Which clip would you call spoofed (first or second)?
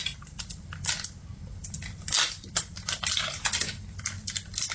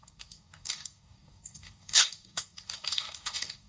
second